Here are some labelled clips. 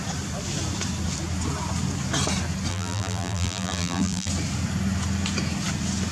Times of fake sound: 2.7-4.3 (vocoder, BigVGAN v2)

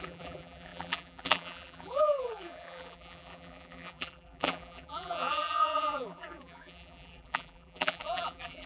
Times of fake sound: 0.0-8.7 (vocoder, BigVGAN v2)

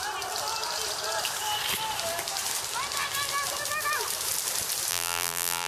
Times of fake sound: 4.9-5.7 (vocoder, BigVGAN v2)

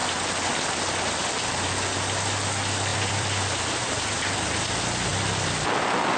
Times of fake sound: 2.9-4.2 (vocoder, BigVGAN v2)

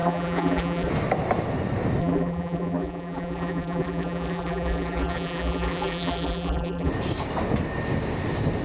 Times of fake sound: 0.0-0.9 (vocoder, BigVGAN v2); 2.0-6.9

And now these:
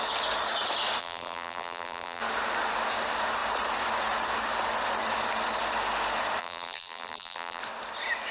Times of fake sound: 1.0-2.2 (vocoder, BigVGAN v2); 6.4-7.6

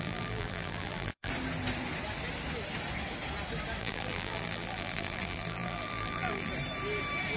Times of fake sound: 0.0-1.3 (vocoder, BigVGAN v2); 3.8-6.5